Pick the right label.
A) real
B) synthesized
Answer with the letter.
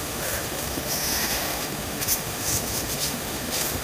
B